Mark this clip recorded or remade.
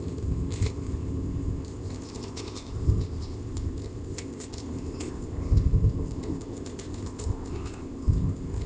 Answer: remade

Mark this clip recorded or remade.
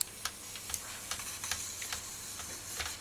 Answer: recorded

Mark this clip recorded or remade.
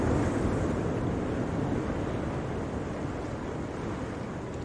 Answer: recorded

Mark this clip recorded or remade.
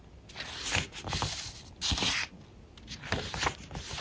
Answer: recorded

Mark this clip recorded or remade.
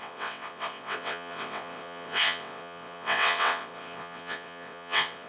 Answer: remade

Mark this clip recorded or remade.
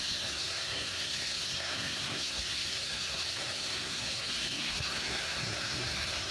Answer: remade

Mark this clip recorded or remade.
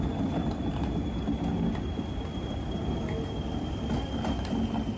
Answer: recorded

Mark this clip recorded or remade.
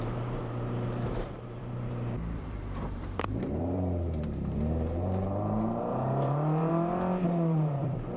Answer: remade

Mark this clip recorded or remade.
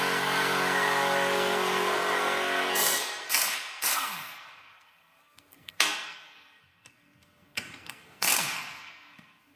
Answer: remade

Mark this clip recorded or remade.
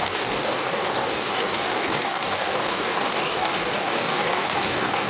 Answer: remade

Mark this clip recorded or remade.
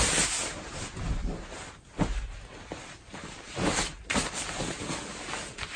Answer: recorded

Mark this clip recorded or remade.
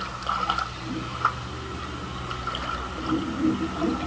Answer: recorded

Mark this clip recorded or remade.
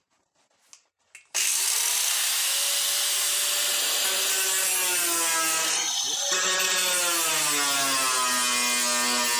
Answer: recorded